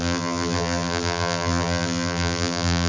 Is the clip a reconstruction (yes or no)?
yes